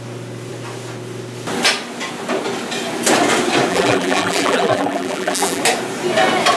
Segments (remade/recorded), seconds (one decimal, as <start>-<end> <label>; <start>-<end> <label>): 0.0-3.7 recorded; 3.7-5.6 remade; 5.6-6.6 recorded